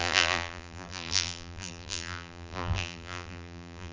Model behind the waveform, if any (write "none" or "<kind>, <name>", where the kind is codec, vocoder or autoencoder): vocoder, BigVGAN v2